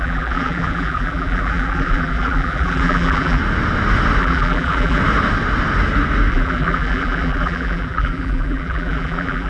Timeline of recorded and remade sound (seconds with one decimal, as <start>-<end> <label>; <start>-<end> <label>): 0.0-3.4 remade; 3.4-4.2 recorded; 4.2-5.0 remade; 5.0-6.3 recorded; 6.3-9.5 remade